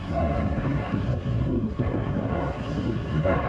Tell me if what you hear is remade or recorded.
remade